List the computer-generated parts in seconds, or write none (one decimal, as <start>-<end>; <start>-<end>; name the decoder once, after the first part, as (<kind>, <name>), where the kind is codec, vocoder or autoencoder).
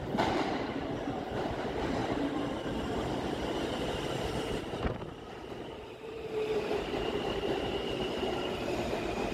0.0-2.0 (vocoder, BigVGAN v2); 4.1-9.3